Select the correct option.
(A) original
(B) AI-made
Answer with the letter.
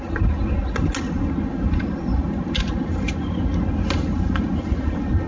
A